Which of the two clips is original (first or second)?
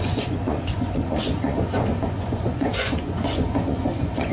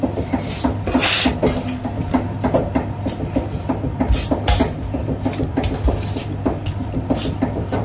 second